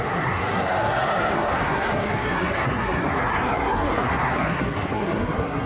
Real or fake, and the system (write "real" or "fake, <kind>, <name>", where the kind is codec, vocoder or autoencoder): fake, codec, SNAC